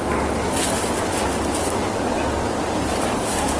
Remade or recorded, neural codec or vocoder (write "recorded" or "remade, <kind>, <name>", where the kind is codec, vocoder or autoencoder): recorded